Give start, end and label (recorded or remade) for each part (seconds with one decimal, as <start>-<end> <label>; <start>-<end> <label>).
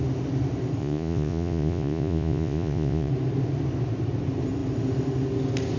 0.0-0.8 recorded; 0.8-3.1 remade; 3.1-5.8 recorded